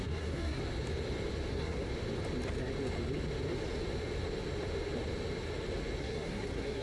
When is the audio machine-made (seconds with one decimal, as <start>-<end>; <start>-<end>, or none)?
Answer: 0.0-0.6; 1.5-1.9; 6.0-6.8